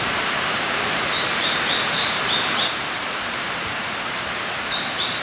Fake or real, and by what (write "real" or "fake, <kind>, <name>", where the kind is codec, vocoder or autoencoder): fake, vocoder, BigVGAN v2